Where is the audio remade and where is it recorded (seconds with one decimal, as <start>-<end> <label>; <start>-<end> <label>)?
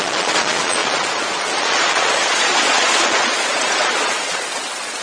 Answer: 0.0-5.0 remade